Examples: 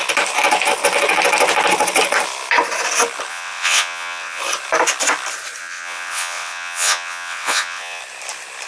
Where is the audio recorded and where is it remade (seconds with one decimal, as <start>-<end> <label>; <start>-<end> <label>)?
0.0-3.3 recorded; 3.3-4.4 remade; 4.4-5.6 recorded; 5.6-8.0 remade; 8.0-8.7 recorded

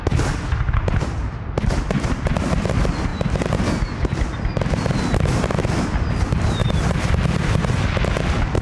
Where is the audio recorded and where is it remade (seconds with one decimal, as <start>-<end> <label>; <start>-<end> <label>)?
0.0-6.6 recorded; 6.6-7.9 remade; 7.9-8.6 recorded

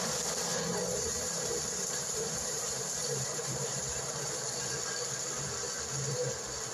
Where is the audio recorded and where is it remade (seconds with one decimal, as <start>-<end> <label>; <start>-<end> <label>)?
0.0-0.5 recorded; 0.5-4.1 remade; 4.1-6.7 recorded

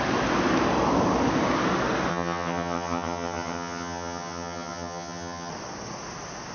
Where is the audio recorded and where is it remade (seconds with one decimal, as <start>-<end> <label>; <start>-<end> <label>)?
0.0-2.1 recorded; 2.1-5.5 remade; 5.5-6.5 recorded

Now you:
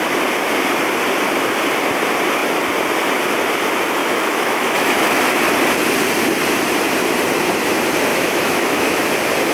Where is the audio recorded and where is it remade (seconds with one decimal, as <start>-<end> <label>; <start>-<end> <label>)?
0.0-4.0 recorded; 4.0-5.4 remade; 5.4-8.1 recorded; 8.1-9.1 remade; 9.1-9.5 recorded